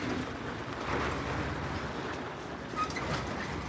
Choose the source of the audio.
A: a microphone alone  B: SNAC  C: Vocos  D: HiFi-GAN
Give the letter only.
A